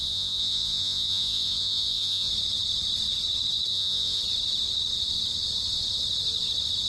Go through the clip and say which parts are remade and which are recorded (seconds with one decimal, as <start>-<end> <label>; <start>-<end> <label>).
0.0-2.3 remade; 2.3-3.7 recorded; 3.7-4.2 remade; 4.2-6.9 recorded